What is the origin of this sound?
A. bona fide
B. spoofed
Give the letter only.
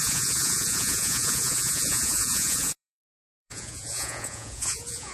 B